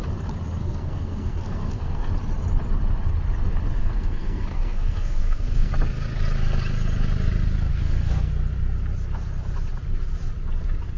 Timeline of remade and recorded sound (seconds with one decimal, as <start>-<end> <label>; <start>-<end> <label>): 0.0-0.6 recorded; 0.6-2.1 remade; 2.1-3.8 recorded; 3.8-5.7 remade; 5.7-7.7 recorded; 7.7-8.3 remade; 8.3-11.0 recorded